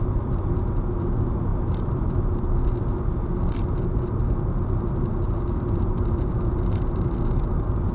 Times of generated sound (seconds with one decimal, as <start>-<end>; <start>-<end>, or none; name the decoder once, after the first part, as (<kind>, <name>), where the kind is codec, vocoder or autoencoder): none